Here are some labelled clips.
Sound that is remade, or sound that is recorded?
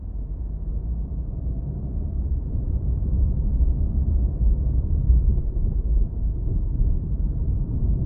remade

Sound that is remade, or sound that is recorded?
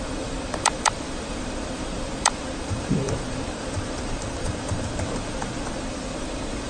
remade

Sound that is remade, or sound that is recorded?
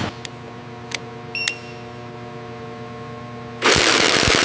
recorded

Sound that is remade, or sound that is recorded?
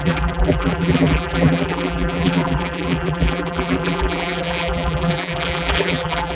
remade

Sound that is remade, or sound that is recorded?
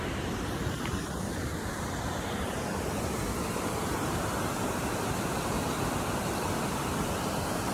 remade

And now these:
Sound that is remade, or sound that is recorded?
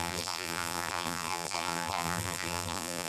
remade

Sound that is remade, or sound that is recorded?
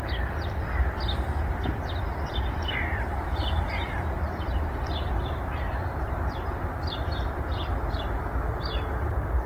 remade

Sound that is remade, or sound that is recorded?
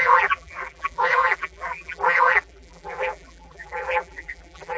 remade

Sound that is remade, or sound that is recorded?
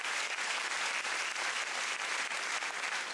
recorded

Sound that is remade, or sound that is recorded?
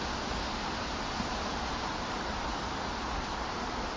remade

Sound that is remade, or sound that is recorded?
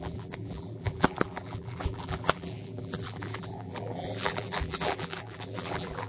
remade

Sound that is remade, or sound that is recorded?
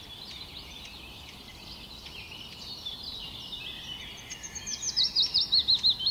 remade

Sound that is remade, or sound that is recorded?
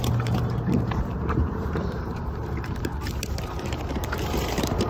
remade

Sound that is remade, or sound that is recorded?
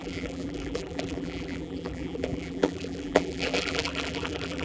remade